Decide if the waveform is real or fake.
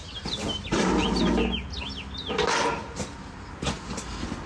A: real